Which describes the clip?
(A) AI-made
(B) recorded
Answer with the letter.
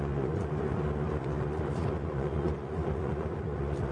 A